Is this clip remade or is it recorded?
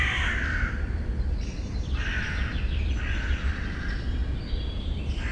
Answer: recorded